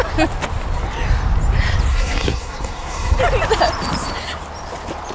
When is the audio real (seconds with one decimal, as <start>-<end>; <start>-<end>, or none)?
0.0-1.9; 3.2-5.1